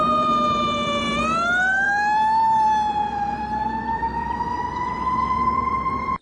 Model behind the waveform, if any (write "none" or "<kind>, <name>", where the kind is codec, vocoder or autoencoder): vocoder, BigVGAN v2